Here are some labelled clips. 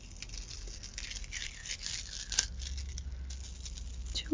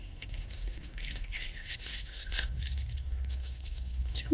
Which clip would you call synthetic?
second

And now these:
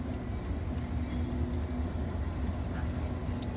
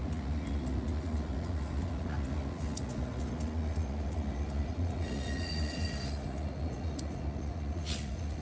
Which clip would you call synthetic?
second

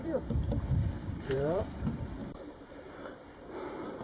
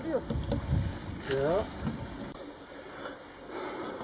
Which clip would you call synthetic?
first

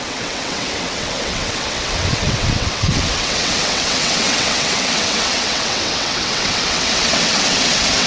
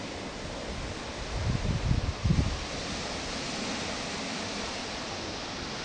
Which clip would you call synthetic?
first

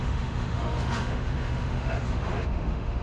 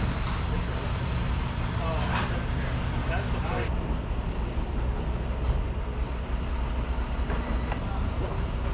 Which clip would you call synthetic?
first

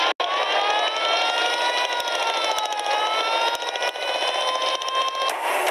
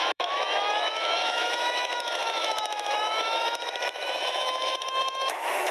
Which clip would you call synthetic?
second